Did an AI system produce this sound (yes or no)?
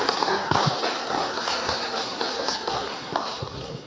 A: yes